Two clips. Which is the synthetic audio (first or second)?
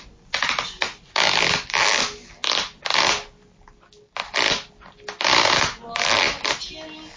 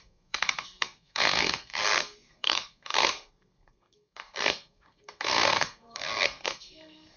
second